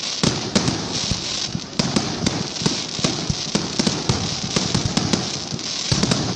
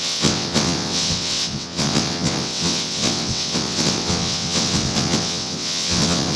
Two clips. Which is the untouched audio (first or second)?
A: first